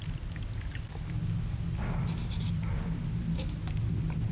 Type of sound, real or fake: real